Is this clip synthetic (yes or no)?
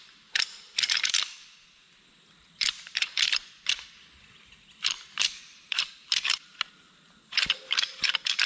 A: no